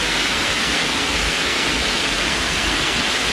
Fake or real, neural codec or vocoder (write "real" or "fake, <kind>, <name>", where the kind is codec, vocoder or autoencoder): fake, codec, SNAC